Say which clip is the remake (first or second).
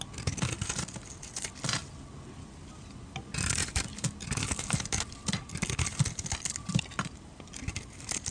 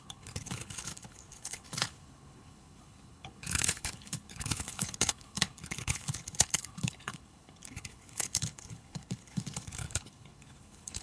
second